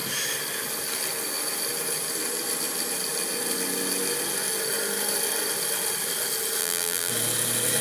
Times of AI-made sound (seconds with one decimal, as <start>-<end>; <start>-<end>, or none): 6.6-7.1